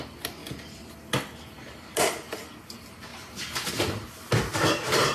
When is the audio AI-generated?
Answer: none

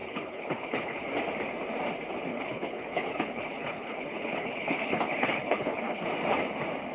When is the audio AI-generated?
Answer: 0.0-1.1 (codec, HILCodec); 2.3-6.0

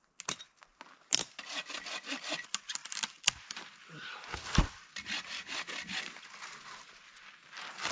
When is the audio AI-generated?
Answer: none

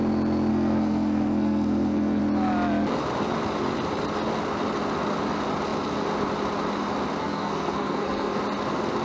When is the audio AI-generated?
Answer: 0.5-2.2 (codec, SNAC); 7.2-8.4